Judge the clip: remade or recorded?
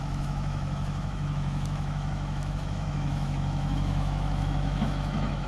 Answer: remade